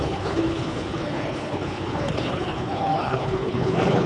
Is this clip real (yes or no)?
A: no